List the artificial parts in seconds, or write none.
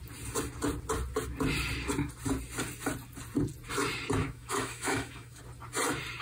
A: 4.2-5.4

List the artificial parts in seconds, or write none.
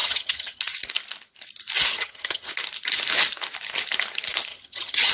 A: 0.0-0.6; 1.9-2.5; 4.5-5.1